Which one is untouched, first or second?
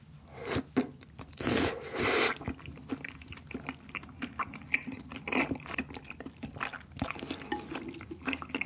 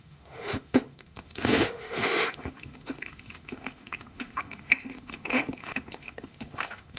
first